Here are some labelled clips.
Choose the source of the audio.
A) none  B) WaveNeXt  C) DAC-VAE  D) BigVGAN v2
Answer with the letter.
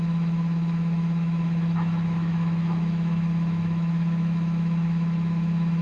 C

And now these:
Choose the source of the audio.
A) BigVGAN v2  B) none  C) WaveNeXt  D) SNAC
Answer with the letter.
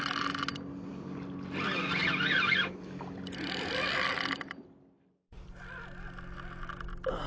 B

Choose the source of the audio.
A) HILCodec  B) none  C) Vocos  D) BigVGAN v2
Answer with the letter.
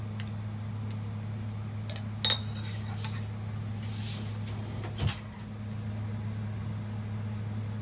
B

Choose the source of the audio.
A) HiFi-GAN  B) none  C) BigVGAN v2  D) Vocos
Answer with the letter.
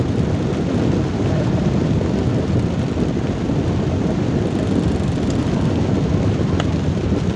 B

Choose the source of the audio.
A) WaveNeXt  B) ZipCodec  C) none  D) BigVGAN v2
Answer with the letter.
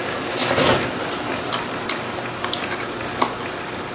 C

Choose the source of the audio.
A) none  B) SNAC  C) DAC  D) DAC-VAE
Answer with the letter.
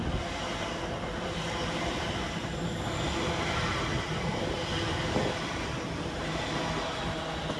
A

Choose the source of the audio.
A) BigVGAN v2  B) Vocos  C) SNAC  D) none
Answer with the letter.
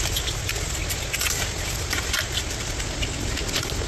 D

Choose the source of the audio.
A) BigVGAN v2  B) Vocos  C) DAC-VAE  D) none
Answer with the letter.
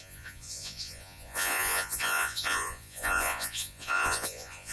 B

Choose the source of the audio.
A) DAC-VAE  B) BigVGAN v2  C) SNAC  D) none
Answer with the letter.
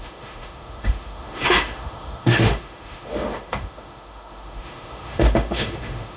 A